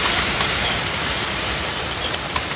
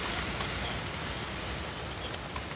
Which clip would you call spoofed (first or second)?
first